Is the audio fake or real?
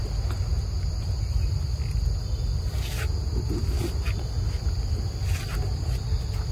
real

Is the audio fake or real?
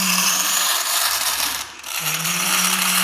fake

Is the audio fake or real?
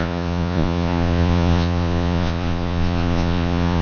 fake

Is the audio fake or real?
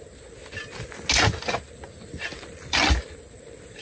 real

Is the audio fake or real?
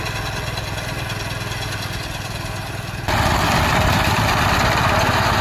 real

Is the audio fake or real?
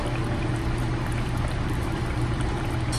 real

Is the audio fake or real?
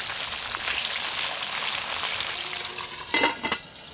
real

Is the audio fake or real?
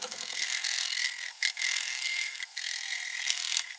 fake